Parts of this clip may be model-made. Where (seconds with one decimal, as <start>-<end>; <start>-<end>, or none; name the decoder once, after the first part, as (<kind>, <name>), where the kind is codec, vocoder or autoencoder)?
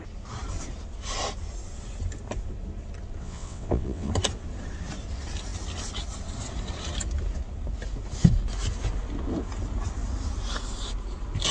3.2-4.1 (vocoder, WaveNeXt)